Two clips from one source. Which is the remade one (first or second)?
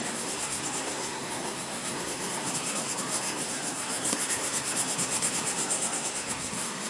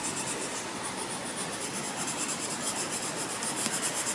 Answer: first